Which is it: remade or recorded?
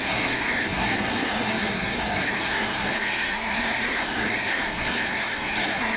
remade